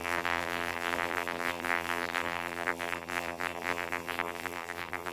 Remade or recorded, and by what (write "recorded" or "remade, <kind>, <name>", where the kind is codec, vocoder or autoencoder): remade, vocoder, BigVGAN v2